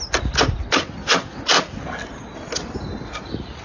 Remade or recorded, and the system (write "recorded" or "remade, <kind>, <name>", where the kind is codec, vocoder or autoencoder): recorded